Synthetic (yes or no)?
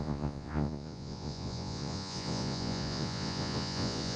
yes